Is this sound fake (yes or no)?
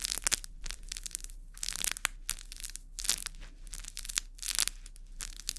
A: no